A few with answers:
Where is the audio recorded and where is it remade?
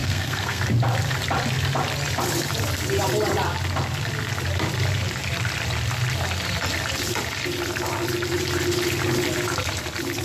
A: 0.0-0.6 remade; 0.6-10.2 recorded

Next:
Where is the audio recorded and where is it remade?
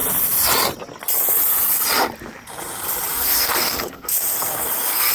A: 0.0-3.1 recorded; 3.1-5.1 remade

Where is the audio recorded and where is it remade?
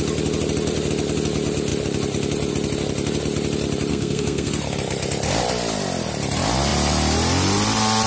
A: 0.0-3.9 recorded; 3.9-4.5 remade; 4.5-8.1 recorded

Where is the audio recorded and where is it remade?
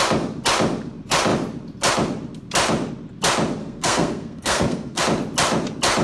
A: 0.0-3.6 recorded; 3.6-5.0 remade; 5.0-6.0 recorded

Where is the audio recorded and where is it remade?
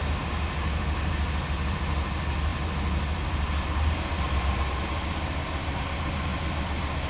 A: 0.0-7.1 recorded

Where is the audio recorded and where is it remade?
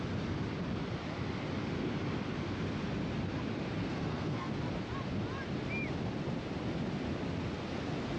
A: 0.0-3.8 recorded; 3.8-4.5 remade; 4.5-8.2 recorded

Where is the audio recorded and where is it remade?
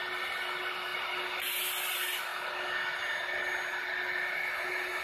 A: 0.0-5.0 recorded